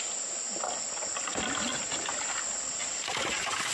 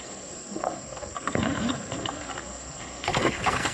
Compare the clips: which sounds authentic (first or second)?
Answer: first